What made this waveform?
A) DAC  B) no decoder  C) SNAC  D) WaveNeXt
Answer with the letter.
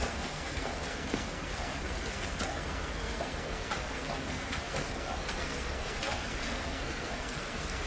C